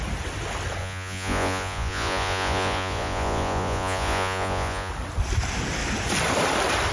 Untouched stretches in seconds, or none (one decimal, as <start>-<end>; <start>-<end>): 0.0-0.8; 4.9-6.9